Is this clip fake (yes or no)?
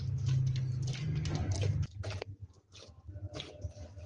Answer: no